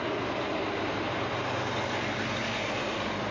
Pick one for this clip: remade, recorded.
recorded